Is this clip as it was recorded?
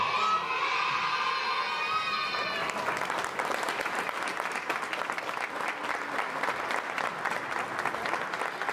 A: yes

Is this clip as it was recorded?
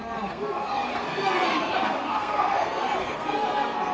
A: no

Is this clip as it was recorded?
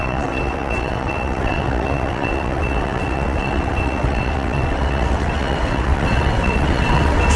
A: no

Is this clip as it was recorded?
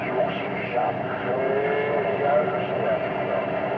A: yes